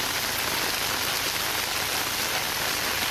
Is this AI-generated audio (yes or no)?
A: no